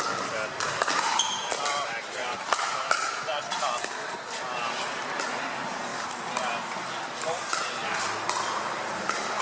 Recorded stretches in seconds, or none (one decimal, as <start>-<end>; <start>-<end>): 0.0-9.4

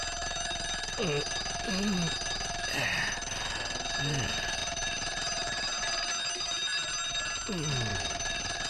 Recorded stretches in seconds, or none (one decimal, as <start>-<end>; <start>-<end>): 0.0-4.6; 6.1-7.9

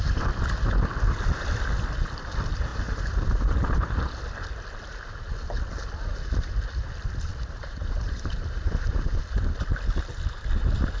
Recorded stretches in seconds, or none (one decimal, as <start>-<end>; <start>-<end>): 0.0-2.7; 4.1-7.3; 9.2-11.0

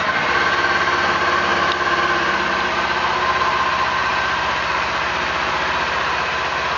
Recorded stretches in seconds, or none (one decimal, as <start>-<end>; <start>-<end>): 0.0-4.1; 6.3-6.8

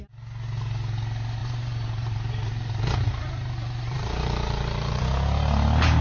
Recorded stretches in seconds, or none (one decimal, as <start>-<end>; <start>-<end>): 0.0-1.4; 5.0-6.0